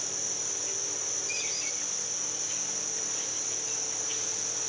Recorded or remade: recorded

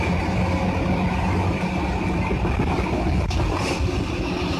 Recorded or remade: recorded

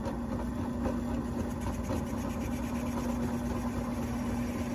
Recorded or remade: recorded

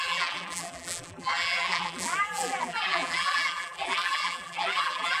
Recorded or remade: remade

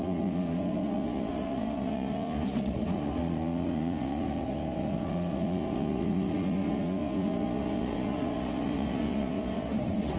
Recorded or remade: remade